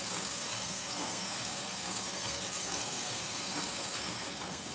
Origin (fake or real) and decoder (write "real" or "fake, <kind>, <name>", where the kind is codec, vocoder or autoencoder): fake, codec, SNAC